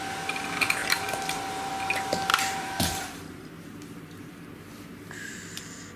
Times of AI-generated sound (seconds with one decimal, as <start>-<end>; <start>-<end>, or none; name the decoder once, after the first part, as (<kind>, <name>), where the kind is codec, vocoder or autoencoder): 0.8-1.7 (vocoder, BigVGAN v2); 2.3-5.6